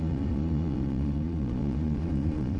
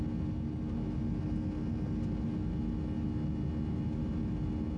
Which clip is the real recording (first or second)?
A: second